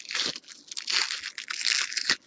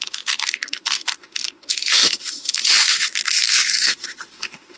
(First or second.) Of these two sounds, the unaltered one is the first